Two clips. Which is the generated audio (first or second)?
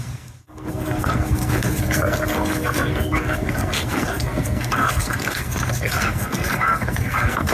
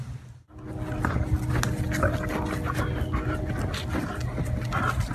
first